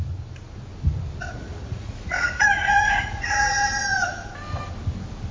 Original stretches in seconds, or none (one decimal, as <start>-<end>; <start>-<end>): 0.0-1.3; 4.3-5.3